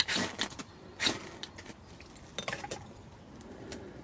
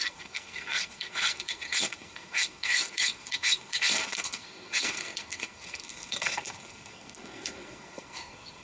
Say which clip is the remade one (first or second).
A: second